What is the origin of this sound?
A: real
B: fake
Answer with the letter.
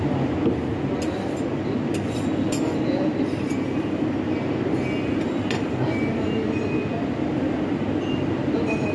A